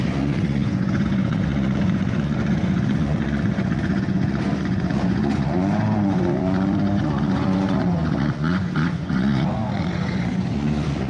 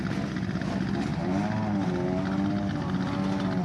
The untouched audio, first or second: second